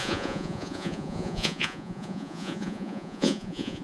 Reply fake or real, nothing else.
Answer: fake